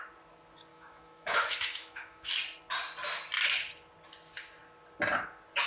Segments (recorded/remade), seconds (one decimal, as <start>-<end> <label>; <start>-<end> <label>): 0.0-0.7 recorded; 0.7-2.3 remade; 2.3-5.7 recorded